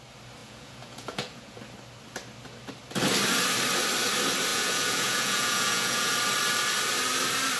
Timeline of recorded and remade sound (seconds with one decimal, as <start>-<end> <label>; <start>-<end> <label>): 0.0-0.4 recorded; 0.4-1.6 remade; 1.6-4.5 recorded; 4.5-6.1 remade; 6.1-7.6 recorded